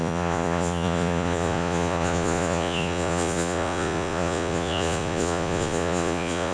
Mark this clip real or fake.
fake